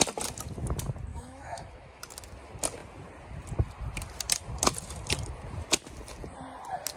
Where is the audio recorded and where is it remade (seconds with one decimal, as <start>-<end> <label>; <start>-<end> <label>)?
0.0-1.1 recorded; 1.1-2.0 remade; 2.0-7.0 recorded